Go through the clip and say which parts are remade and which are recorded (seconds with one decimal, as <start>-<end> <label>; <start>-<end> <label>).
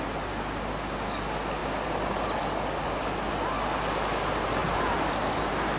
0.0-5.8 recorded